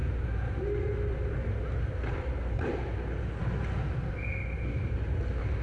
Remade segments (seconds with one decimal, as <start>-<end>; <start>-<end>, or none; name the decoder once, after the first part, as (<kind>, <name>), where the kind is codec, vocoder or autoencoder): none